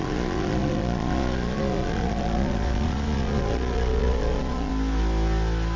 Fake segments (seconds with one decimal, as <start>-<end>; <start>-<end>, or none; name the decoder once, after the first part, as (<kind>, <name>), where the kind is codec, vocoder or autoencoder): 0.0-4.7 (vocoder, Vocos)